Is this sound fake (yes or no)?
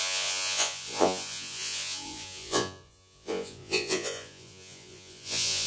yes